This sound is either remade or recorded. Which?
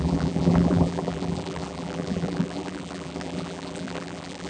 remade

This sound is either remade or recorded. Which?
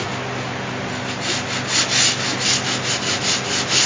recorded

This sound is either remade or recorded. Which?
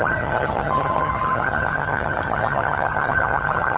remade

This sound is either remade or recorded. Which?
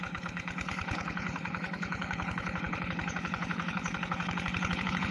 remade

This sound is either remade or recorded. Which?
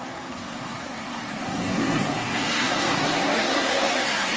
remade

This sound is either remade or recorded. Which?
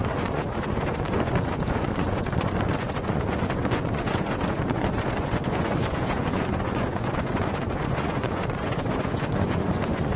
remade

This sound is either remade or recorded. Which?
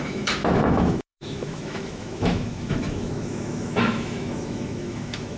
remade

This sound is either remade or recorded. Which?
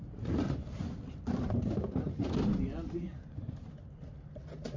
remade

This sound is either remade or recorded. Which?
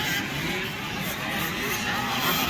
recorded